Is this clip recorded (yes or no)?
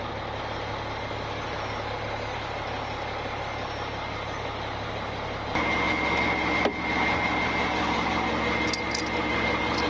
yes